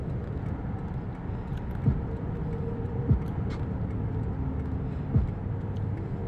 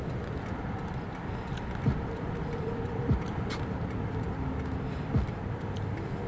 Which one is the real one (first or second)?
first